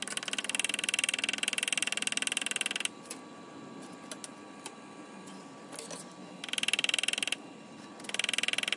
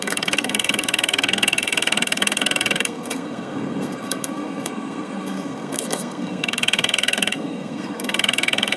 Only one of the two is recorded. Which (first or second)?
first